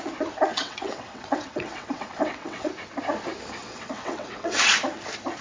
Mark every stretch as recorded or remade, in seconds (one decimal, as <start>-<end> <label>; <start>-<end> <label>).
0.0-0.5 recorded; 0.5-2.7 remade; 2.7-3.6 recorded; 3.6-4.7 remade; 4.7-5.4 recorded